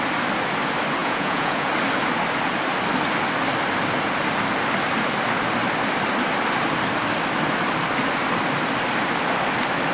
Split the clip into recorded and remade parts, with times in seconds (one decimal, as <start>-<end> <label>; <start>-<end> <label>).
0.0-1.0 recorded; 1.0-1.7 remade; 1.7-9.9 recorded

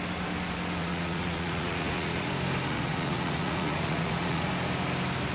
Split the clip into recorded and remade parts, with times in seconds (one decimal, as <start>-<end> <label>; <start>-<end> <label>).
0.0-0.8 recorded; 0.8-2.3 remade; 2.3-2.7 recorded; 2.7-4.5 remade; 4.5-5.3 recorded

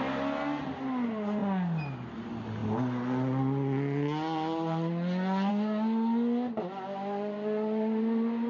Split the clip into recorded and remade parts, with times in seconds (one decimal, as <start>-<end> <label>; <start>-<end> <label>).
0.0-8.5 recorded

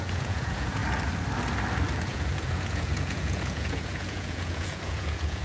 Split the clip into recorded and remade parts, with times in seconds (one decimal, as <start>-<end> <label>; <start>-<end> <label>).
0.0-0.8 remade; 0.8-2.0 recorded; 2.0-5.4 remade

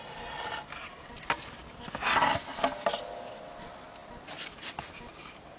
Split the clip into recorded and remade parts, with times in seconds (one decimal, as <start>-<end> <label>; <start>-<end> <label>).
0.0-5.6 recorded

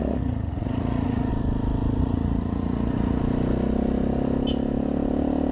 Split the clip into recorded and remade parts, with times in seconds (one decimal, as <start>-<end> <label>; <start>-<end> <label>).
0.0-1.3 remade; 1.3-2.0 recorded; 2.0-3.2 remade; 3.2-5.5 recorded